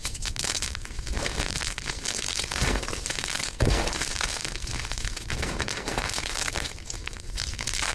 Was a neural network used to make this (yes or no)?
yes